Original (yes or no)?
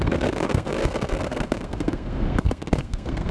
no